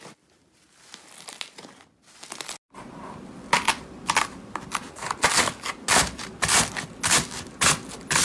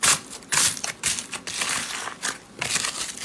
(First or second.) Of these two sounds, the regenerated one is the second